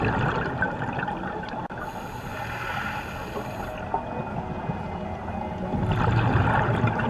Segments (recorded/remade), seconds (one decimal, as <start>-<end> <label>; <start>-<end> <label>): 0.0-7.1 recorded